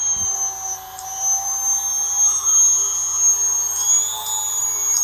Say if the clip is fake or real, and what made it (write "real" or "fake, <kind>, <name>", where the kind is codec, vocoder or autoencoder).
real